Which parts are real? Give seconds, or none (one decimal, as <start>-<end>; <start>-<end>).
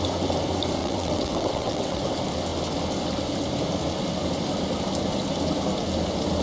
0.0-0.8; 2.0-6.4